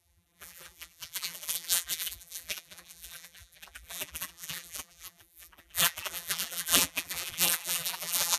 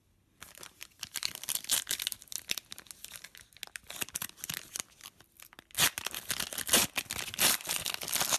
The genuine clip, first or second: second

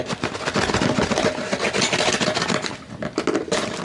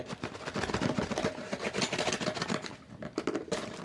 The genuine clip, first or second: first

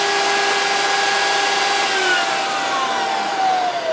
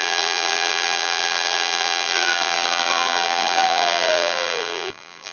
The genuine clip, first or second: first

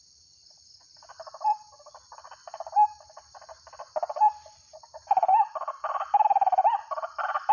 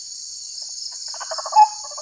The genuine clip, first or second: second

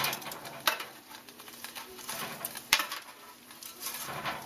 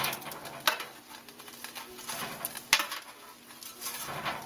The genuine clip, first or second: second